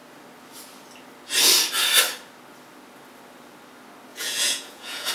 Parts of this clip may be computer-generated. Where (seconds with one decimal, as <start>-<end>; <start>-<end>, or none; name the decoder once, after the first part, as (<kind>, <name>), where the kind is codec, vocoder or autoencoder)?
4.1-5.1 (vocoder, Vocos)